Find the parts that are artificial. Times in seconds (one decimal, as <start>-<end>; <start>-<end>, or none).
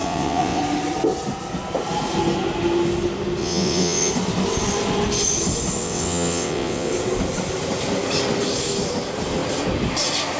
0.0-0.6; 3.4-4.1; 5.8-6.9